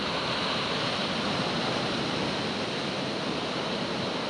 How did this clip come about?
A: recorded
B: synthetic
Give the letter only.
A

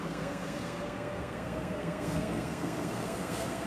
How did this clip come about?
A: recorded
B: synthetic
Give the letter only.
B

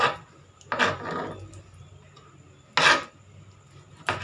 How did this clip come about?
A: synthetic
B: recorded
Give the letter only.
B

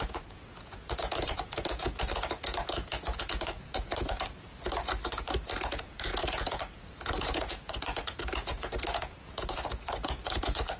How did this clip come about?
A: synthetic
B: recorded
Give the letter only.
A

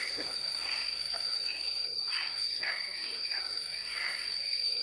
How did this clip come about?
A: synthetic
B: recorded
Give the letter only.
A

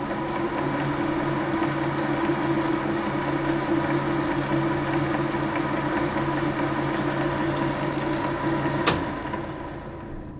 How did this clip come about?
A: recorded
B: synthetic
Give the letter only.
A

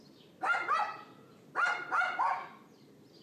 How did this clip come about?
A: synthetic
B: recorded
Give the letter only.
B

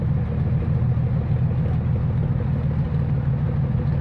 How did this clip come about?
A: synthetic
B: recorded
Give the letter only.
B